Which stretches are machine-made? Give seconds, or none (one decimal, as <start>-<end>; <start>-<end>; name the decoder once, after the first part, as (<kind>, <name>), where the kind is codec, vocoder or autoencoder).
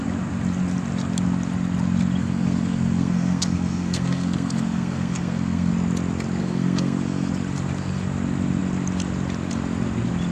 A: 2.2-5.7 (codec, SNAC); 6.4-7.3